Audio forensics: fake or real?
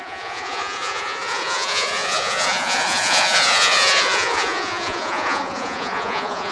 fake